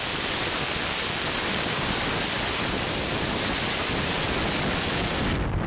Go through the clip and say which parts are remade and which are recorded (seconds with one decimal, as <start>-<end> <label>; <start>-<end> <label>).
0.0-1.5 recorded; 1.5-2.0 remade; 2.0-5.7 recorded